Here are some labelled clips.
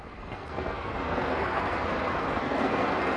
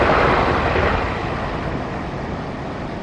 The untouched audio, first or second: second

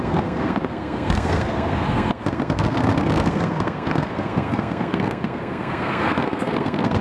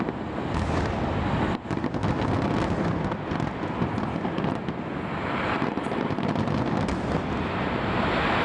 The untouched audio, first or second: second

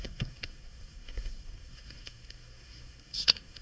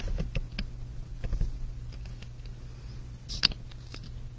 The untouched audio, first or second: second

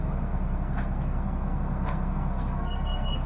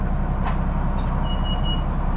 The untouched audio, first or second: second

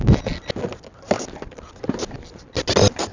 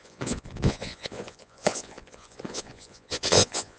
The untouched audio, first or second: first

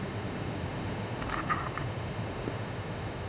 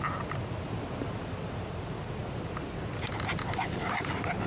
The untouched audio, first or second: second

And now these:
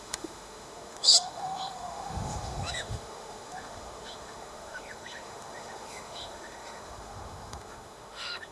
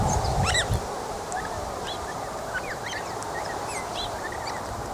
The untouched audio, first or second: second